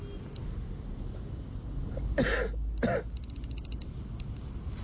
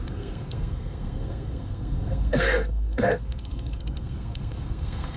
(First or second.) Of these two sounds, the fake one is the second